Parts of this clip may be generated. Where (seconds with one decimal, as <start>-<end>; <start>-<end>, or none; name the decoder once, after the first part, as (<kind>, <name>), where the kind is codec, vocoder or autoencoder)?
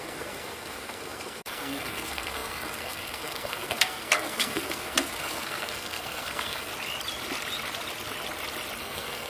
0.0-6.7 (codec, SNAC); 8.8-9.3